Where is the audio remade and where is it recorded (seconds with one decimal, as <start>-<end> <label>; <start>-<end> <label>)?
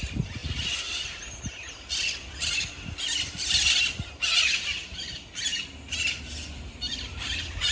0.0-7.7 recorded